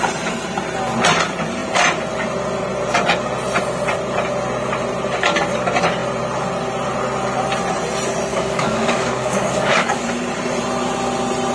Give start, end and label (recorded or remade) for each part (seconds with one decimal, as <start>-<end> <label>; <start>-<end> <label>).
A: 0.0-8.3 recorded; 8.3-10.0 remade; 10.0-11.5 recorded